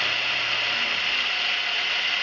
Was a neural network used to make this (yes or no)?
no